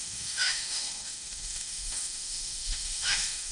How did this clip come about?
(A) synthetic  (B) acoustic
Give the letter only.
A